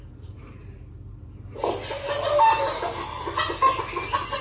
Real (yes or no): yes